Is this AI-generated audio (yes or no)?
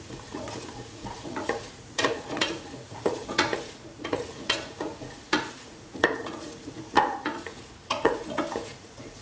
yes